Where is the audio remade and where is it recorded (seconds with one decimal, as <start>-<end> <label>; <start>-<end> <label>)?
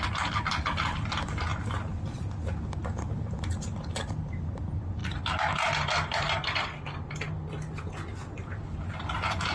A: 0.0-1.5 recorded; 1.5-2.3 remade; 2.3-2.8 recorded; 2.8-3.7 remade; 3.7-5.0 recorded; 5.0-5.5 remade; 5.5-9.5 recorded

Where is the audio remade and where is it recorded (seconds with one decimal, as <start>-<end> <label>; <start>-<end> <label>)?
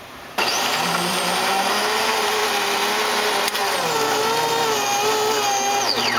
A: 0.0-2.4 remade; 2.4-6.2 recorded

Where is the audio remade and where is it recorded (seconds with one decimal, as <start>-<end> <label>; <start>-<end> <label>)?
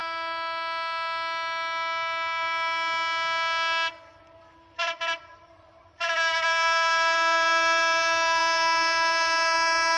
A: 0.0-4.2 recorded; 4.2-10.0 remade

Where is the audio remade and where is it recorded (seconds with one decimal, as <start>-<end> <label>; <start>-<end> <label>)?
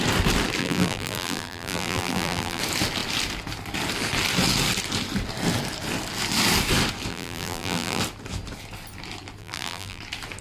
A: 0.0-0.6 recorded; 0.6-2.6 remade; 2.6-7.1 recorded; 7.1-8.0 remade; 8.0-9.4 recorded; 9.4-10.0 remade; 10.0-10.4 recorded